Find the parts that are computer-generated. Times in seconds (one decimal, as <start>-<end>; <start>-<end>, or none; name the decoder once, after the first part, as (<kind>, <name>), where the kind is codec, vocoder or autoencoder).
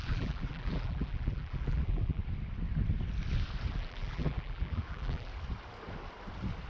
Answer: 0.0-2.2 (vocoder, BigVGAN v2); 3.7-5.3